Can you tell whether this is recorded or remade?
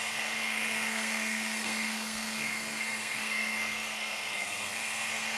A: remade